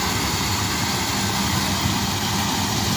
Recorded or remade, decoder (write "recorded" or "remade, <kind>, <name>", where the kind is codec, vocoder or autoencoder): recorded